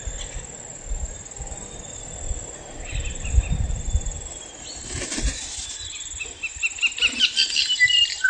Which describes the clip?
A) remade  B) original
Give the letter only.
B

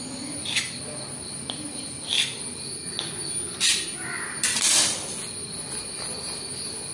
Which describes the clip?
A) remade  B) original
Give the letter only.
B